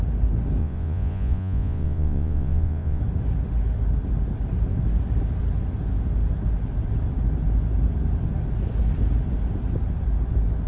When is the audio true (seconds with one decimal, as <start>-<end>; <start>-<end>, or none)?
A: 0.0-0.6; 3.0-10.7